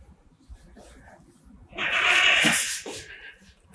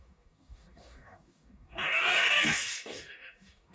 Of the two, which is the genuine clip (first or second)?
first